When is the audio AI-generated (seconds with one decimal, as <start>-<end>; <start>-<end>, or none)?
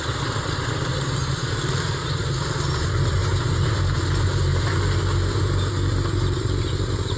0.0-4.5; 6.1-7.2